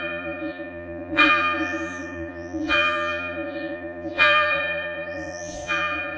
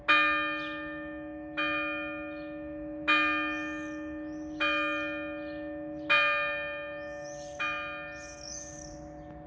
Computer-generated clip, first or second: first